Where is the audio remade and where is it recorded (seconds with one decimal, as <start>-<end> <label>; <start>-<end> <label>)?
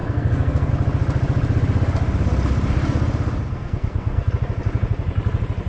0.0-0.7 remade; 0.7-3.5 recorded; 3.5-4.3 remade; 4.3-5.7 recorded